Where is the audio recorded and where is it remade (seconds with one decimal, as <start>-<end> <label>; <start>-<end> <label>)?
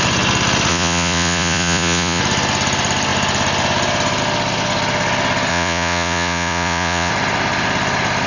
0.0-0.7 recorded; 0.7-2.2 remade; 2.2-5.5 recorded; 5.5-7.1 remade; 7.1-8.3 recorded